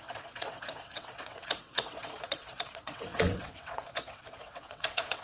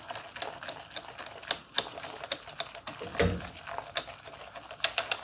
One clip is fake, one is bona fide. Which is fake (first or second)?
first